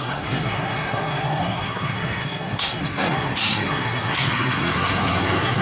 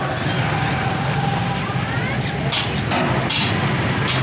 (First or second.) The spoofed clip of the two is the first